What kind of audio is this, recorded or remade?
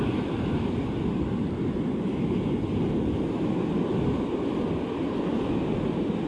recorded